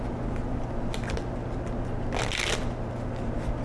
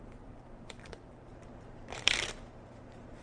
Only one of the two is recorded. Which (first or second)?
first